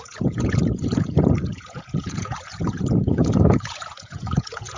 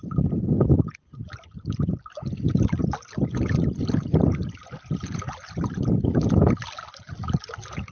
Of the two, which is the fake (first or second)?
first